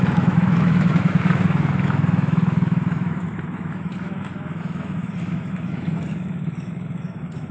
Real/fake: fake